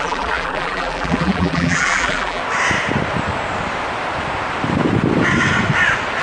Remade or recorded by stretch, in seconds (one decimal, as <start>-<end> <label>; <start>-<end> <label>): 0.0-2.4 remade; 2.4-6.2 recorded

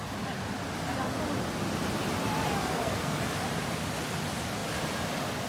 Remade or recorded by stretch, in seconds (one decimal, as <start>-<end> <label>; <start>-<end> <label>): 0.0-2.6 recorded; 2.6-3.2 remade; 3.2-5.5 recorded